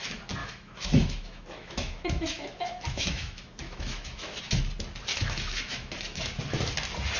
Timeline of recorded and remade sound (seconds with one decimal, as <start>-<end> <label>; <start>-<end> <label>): 0.0-0.4 recorded; 0.4-4.4 remade; 4.4-5.1 recorded; 5.1-6.4 remade; 6.4-7.2 recorded